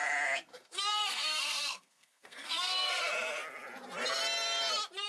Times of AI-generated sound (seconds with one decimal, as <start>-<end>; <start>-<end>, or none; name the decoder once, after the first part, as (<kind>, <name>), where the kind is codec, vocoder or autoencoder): 0.5-3.0 (codec, SNAC)